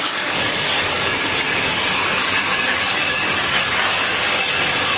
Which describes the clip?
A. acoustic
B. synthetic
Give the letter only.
B